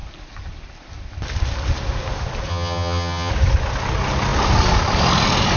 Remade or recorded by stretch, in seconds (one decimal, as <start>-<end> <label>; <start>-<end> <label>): 0.0-2.5 recorded; 2.5-3.3 remade; 3.3-5.6 recorded